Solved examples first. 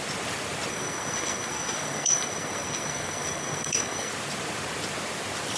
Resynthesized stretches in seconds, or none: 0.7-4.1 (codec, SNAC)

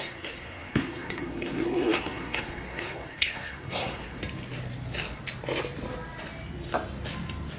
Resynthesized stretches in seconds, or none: 0.0-4.2 (codec, SNAC)

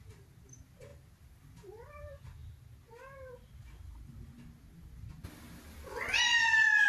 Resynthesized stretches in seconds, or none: none

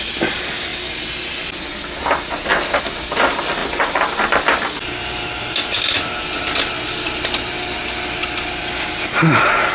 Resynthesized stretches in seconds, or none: none

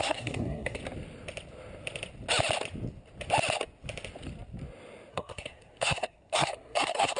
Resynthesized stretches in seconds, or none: 0.0-0.8 (codec, SNAC); 5.1-7.2

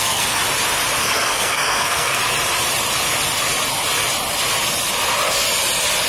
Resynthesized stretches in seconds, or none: 0.0-0.4 (codec, SNAC); 1.0-2.2

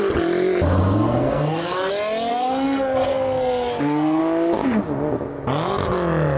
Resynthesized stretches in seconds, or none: 0.8-1.9 (codec, SNAC); 2.3-4.2